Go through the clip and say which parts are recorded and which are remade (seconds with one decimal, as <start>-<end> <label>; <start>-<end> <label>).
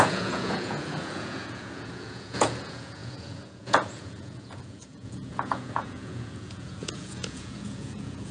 0.0-8.3 remade